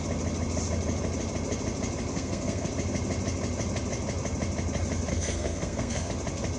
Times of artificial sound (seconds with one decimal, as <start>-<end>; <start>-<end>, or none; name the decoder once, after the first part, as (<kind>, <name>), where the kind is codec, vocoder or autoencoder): 2.1-2.7 (codec, SNAC); 5.1-6.1

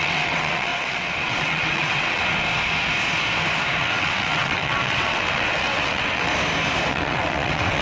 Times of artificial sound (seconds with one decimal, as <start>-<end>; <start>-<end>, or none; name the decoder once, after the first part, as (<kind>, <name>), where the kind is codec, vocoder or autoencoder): 0.0-2.2 (vocoder, WaveNeXt); 3.8-6.3; 6.9-7.8

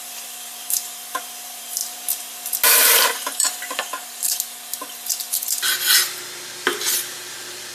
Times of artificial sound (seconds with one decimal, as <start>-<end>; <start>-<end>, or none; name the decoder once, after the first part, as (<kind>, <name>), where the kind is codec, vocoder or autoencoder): 0.0-1.8 (vocoder, BigVGAN v2); 2.8-3.9; 7.3-7.7